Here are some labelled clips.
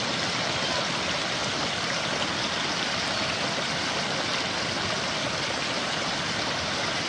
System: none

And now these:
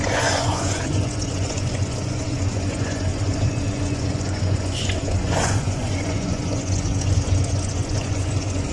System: vocoder, Vocos